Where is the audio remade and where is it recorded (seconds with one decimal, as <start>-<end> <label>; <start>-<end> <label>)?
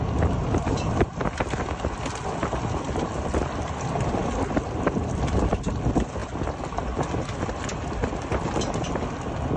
0.0-9.6 recorded